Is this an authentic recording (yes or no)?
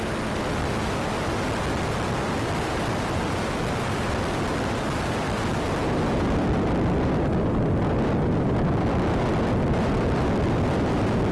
yes